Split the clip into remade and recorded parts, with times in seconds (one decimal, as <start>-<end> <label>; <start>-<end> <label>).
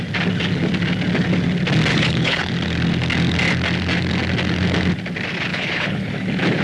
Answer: 0.0-1.9 recorded; 1.9-2.5 remade; 2.5-5.5 recorded; 5.5-6.1 remade; 6.1-6.6 recorded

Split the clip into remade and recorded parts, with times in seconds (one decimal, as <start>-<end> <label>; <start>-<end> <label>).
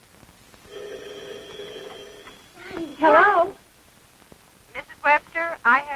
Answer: 0.0-4.7 recorded; 4.7-6.0 remade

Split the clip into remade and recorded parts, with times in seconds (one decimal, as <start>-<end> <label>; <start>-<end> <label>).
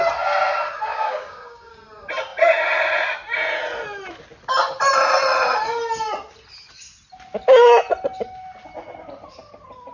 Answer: 0.0-0.9 recorded; 0.9-1.7 remade; 1.7-9.9 recorded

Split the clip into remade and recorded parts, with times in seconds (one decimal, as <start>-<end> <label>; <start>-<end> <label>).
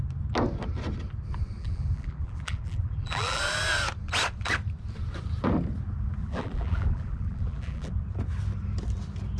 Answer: 0.0-1.6 recorded; 1.6-3.4 remade; 3.4-6.2 recorded; 6.2-7.9 remade; 7.9-9.4 recorded